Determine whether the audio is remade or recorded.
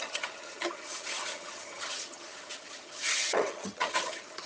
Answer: remade